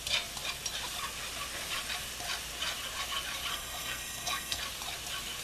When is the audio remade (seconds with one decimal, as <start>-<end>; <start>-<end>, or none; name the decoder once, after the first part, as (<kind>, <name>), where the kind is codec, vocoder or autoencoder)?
3.5-4.6 (codec, SNAC)